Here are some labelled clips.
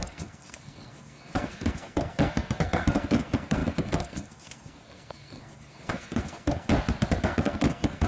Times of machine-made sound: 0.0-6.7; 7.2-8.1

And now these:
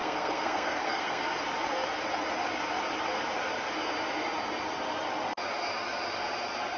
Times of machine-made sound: 0.0-1.2